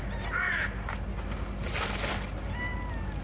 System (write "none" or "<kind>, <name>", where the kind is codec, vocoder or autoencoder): none